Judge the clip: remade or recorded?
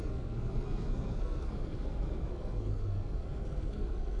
remade